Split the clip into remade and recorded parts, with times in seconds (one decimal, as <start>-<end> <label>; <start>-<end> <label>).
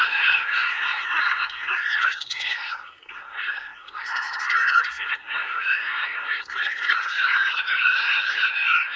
0.0-9.0 remade